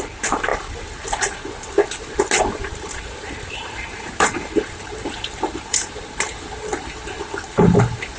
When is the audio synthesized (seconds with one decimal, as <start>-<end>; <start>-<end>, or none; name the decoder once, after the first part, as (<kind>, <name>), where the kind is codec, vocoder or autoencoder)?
0.0-0.5 (vocoder, BigVGAN v2); 2.4-6.7